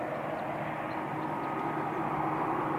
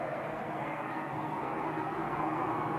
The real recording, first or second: first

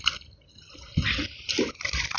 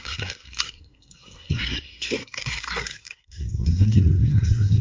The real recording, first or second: first